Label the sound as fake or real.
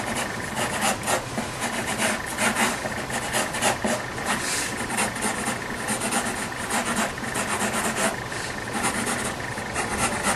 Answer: real